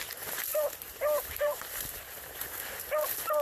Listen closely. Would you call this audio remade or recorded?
recorded